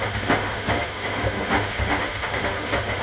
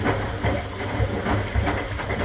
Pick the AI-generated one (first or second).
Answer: first